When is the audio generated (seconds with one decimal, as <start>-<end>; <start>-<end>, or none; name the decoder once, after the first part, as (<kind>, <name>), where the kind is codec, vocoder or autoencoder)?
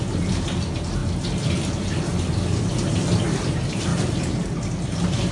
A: 0.0-1.0 (vocoder, BigVGAN v2); 3.2-3.9; 4.7-5.3